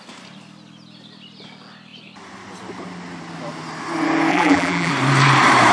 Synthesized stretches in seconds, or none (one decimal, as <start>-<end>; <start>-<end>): 4.3-4.9